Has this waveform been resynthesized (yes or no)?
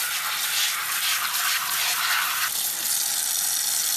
no